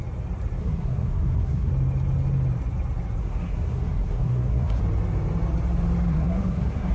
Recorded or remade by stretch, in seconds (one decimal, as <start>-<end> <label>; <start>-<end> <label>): 0.0-0.6 recorded; 0.6-1.7 remade; 1.7-3.2 recorded; 3.2-4.8 remade; 4.8-6.1 recorded; 6.1-6.9 remade